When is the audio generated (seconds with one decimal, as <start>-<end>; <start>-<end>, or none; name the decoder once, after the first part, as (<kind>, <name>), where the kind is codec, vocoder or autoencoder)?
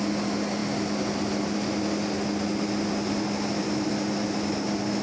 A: none